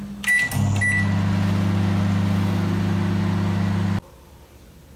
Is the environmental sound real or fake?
real